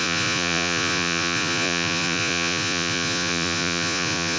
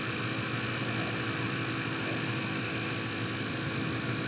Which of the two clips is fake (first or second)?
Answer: first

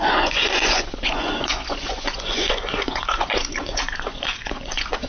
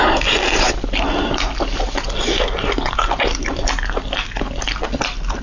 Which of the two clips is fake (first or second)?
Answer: first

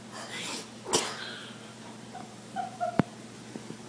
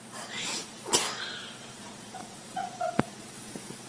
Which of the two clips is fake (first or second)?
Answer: second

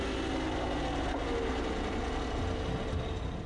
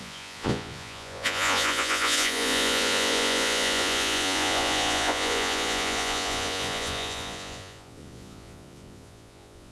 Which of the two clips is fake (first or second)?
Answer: second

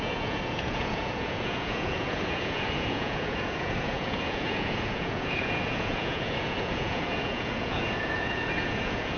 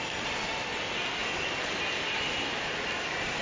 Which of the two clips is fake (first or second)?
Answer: first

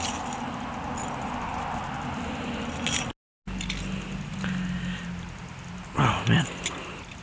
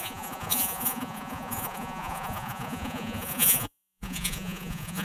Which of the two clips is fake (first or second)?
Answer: second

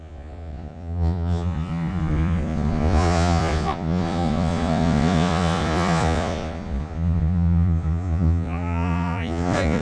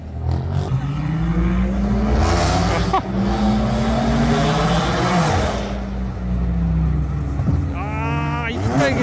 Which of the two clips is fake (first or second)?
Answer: first